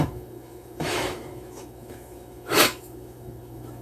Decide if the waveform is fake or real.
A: fake